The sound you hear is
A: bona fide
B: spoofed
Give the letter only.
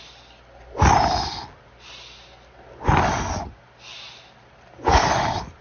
A